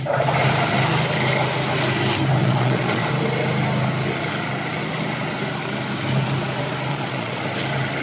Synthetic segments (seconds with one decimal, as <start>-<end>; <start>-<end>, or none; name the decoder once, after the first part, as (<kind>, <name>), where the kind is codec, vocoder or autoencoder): 2.4-3.1 (vocoder, Vocos); 6.9-7.4